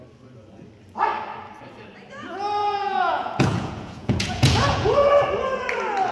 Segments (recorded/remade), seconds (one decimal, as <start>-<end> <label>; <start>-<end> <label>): 0.0-2.6 recorded; 2.6-5.1 remade; 5.1-6.1 recorded